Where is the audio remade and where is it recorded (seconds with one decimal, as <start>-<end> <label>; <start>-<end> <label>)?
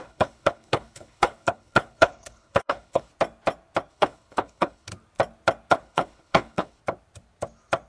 0.0-3.1 remade; 3.1-3.9 recorded; 3.9-4.9 remade; 4.9-5.7 recorded; 5.7-6.8 remade; 6.8-7.9 recorded